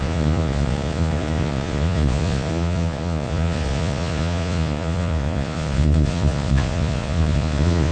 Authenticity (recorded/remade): remade